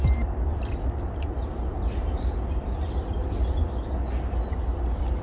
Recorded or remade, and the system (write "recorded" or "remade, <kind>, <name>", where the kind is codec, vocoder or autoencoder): recorded